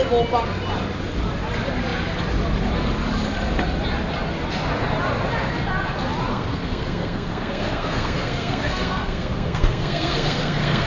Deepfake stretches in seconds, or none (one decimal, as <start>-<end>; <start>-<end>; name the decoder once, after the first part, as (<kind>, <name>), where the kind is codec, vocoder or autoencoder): 6.3-10.9 (codec, SNAC)